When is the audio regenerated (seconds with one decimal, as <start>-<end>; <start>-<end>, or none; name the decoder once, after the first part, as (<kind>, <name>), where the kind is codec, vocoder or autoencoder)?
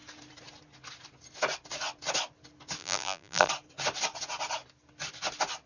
2.8-3.5 (vocoder, BigVGAN v2)